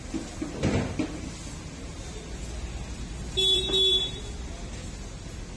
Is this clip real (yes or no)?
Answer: yes